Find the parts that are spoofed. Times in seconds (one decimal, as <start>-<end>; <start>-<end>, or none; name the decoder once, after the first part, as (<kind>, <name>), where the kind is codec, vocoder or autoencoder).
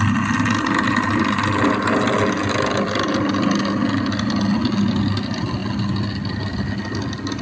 none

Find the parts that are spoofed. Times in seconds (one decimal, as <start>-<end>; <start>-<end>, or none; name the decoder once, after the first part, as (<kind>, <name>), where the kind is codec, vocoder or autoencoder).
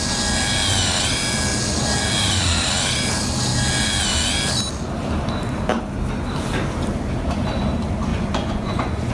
8.1-9.1 (vocoder, Vocos)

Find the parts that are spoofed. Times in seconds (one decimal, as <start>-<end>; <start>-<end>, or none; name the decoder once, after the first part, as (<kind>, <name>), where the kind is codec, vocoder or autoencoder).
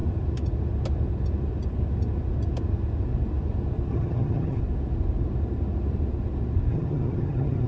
3.9-4.6 (vocoder, HiFi-GAN); 6.7-7.7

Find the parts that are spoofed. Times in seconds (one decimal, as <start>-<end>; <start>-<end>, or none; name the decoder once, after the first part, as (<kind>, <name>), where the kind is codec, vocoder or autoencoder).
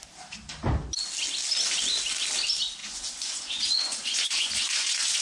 2.8-5.2 (vocoder, Vocos)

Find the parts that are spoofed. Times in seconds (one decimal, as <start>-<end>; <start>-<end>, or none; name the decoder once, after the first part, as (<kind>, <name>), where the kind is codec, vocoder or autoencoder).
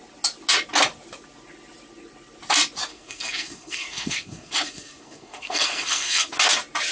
2.9-6.3 (codec, SNAC)